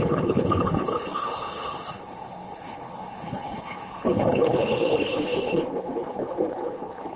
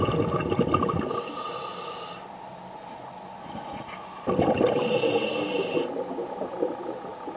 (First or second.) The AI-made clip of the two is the first